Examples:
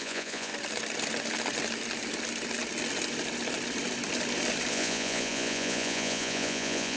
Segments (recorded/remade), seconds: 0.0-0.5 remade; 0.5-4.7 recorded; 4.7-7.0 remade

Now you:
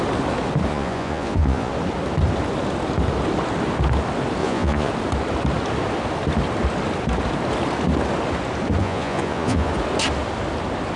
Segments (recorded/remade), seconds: 0.0-0.7 recorded; 0.7-1.7 remade; 1.7-4.4 recorded; 4.4-4.9 remade; 4.9-8.8 recorded; 8.8-9.7 remade; 9.7-11.0 recorded